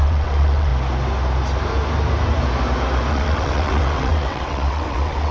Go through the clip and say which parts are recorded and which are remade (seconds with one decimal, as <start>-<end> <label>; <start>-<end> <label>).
0.0-0.7 remade; 0.7-3.1 recorded; 3.1-5.3 remade

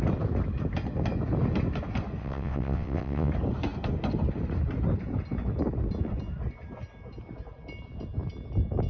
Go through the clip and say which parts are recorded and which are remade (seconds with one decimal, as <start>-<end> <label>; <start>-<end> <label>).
0.0-2.2 recorded; 2.2-3.3 remade; 3.3-8.9 recorded

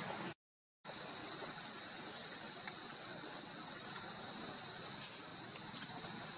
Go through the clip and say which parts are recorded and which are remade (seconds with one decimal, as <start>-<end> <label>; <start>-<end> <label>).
0.0-1.2 recorded; 1.2-1.7 remade; 1.7-2.2 recorded; 2.2-3.8 remade; 3.8-6.4 recorded

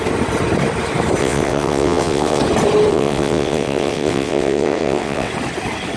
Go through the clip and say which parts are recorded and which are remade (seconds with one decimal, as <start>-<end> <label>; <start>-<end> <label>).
0.0-1.2 recorded; 1.2-2.4 remade; 2.4-2.9 recorded; 2.9-5.3 remade; 5.3-6.0 recorded

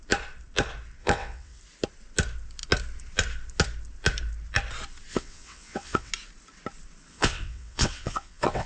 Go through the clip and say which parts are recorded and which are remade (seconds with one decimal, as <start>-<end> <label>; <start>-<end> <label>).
0.0-1.0 recorded; 1.0-1.6 remade; 1.6-5.1 recorded; 5.1-6.1 remade; 6.1-7.1 recorded; 7.1-8.7 remade

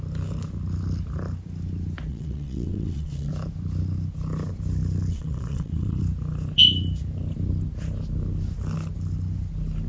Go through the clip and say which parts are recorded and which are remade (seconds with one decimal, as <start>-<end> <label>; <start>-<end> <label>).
0.0-2.1 recorded; 2.1-3.3 remade; 3.3-5.1 recorded; 5.1-6.0 remade; 6.0-9.9 recorded

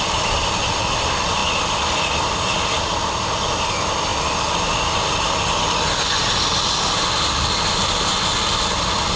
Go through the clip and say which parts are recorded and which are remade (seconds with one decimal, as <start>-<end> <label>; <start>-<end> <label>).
0.0-9.2 recorded

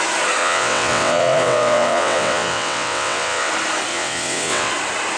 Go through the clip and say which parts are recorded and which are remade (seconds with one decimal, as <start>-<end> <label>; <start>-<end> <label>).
0.0-0.4 recorded; 0.4-3.5 remade; 3.5-3.9 recorded; 3.9-4.7 remade; 4.7-5.2 recorded